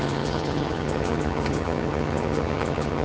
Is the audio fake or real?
fake